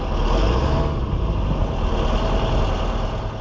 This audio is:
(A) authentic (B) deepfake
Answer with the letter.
A